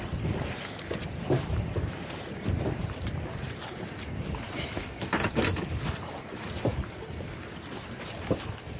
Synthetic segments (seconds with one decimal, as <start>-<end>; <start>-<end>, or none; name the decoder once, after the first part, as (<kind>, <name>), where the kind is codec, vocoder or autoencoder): 0.0-8.8 (vocoder, BigVGAN v2)